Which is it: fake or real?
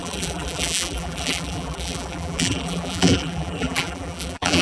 fake